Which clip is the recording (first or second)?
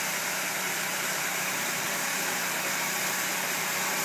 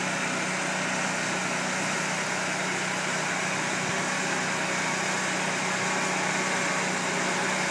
second